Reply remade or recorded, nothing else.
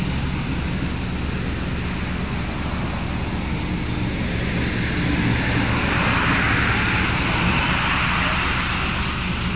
recorded